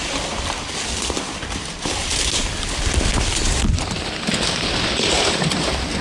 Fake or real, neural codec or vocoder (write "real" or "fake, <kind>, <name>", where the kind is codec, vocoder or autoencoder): real